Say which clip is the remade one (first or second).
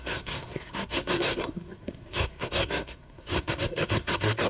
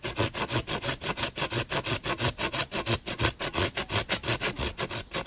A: first